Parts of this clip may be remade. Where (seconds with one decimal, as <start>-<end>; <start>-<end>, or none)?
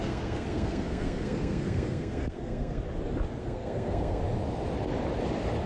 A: 0.0-2.8; 3.4-4.2